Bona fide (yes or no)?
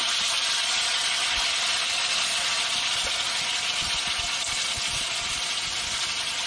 yes